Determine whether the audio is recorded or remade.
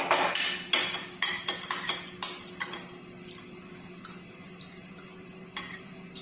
recorded